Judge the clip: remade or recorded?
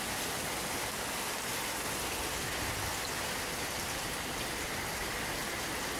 recorded